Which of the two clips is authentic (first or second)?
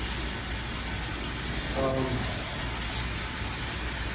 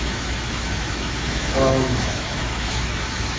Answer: first